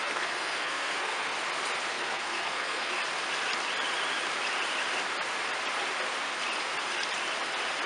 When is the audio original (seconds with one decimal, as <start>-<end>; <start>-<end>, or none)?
1.3-1.9; 3.0-7.9